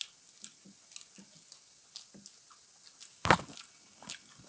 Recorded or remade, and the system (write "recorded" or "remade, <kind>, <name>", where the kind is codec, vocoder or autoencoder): recorded